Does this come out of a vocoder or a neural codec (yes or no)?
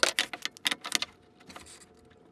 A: no